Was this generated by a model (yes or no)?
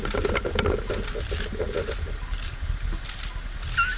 no